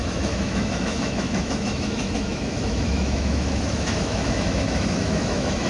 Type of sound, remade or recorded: remade